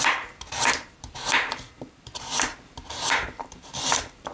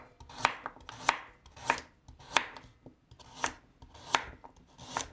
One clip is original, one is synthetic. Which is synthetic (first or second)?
first